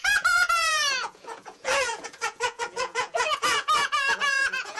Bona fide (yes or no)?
no